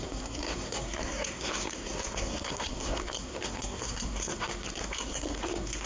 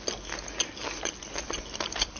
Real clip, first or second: second